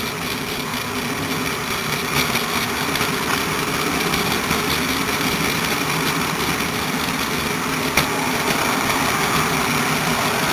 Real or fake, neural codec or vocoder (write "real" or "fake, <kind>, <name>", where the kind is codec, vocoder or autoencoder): real